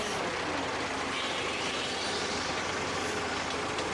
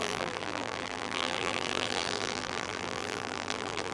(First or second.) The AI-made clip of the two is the second